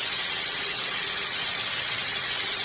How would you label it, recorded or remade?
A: remade